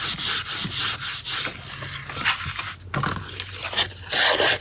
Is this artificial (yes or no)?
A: no